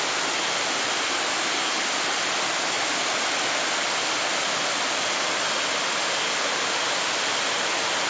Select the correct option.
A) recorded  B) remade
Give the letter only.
A